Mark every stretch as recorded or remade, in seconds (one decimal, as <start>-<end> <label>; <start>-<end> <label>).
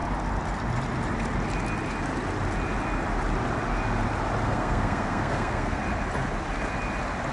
0.0-4.4 recorded; 4.4-5.8 remade; 5.8-7.3 recorded